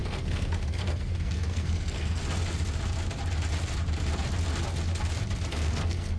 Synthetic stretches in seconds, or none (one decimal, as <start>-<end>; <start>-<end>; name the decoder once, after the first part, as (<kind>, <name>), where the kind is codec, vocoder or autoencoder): 0.0-2.2 (codec, SNAC); 5.5-6.2